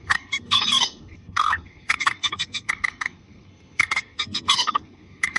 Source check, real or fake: fake